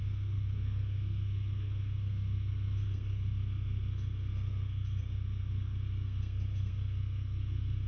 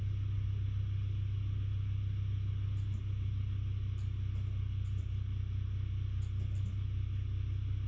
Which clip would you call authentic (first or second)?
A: second